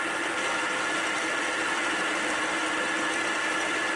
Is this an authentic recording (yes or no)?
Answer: yes